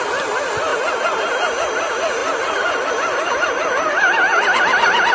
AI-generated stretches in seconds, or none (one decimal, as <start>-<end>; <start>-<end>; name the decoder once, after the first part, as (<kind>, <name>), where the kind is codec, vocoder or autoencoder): 2.2-2.9 (vocoder, BigVGAN v2)